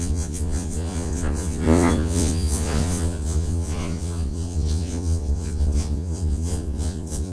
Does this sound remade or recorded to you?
remade